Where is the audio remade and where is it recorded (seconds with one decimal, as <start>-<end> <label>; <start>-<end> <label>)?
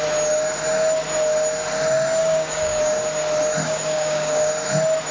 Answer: 0.0-2.2 recorded; 2.2-2.8 remade; 2.8-3.6 recorded; 3.6-4.5 remade; 4.5-5.1 recorded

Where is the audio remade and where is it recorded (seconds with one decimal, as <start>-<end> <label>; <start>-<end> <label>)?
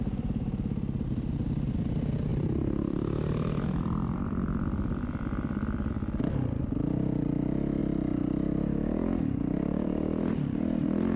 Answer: 0.0-2.3 recorded; 2.3-5.9 remade; 5.9-7.8 recorded; 7.8-10.3 remade; 10.3-11.2 recorded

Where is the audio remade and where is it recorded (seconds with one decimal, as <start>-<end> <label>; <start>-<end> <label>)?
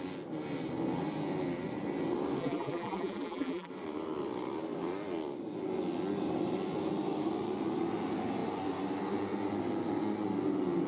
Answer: 0.0-2.4 recorded; 2.4-3.7 remade; 3.7-10.9 recorded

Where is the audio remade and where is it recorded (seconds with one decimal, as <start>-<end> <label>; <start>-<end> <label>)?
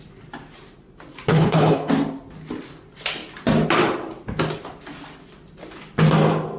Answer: 0.0-1.3 recorded; 1.3-1.9 remade; 1.9-6.6 recorded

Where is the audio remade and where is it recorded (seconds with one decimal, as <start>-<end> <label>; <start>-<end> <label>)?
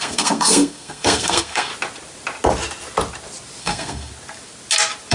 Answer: 0.0-1.7 remade; 1.7-3.6 recorded; 3.6-4.1 remade; 4.1-5.1 recorded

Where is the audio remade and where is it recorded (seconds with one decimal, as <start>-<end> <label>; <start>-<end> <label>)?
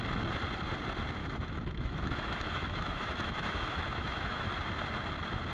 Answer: 0.0-1.2 recorded; 1.2-4.5 remade; 4.5-5.5 recorded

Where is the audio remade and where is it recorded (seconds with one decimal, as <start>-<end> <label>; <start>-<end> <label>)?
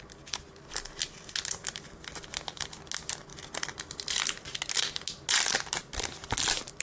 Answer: 0.0-6.8 recorded